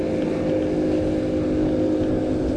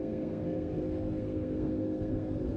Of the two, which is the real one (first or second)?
first